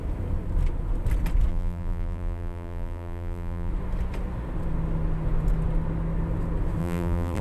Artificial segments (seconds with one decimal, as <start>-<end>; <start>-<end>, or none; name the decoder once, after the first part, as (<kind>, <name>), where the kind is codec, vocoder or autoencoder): 1.5-3.7 (vocoder, BigVGAN v2); 6.8-7.4